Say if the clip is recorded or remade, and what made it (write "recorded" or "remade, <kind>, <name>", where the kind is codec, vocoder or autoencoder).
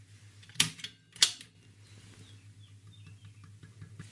recorded